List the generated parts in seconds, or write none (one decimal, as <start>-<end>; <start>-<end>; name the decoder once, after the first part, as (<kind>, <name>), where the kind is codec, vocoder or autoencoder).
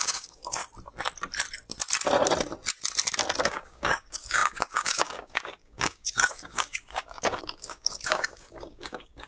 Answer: 0.0-0.6 (codec, DAC); 3.4-9.3